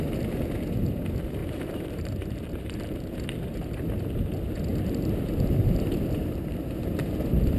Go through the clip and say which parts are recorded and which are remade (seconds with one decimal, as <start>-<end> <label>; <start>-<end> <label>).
0.0-1.4 recorded; 1.4-4.0 remade; 4.0-4.7 recorded; 4.7-7.1 remade; 7.1-7.6 recorded